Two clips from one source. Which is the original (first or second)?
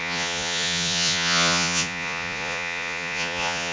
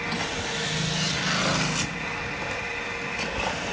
second